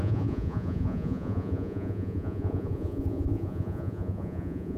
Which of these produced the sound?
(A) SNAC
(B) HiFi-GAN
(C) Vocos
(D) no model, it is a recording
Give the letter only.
C